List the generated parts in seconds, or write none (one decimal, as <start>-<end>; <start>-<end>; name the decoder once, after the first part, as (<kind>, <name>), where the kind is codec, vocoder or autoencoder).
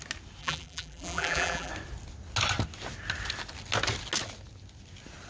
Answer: 0.4-1.7 (vocoder, BigVGAN v2)